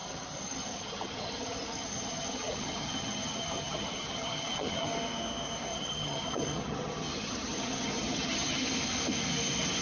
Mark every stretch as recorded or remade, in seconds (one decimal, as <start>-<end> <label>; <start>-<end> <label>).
0.0-4.9 remade; 4.9-5.7 recorded; 5.7-8.7 remade; 8.7-9.8 recorded